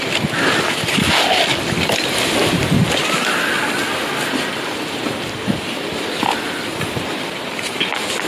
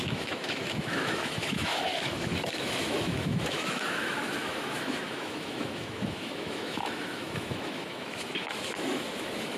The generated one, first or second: second